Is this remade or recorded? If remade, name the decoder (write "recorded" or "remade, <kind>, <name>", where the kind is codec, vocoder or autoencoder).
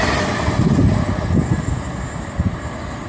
recorded